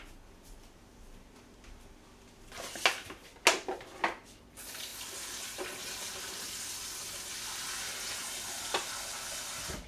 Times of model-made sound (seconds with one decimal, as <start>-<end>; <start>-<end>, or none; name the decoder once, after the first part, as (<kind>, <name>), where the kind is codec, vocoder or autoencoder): none